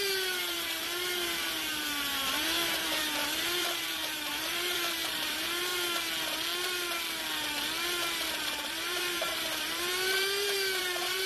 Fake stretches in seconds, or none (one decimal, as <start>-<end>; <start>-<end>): 0.0-5.7; 8.3-11.3